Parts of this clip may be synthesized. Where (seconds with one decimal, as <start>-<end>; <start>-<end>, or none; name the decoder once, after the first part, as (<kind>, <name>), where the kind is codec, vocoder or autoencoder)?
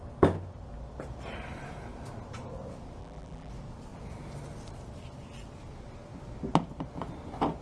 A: 3.0-3.5 (vocoder, BigVGAN v2)